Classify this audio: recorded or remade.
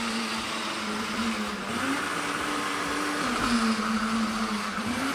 remade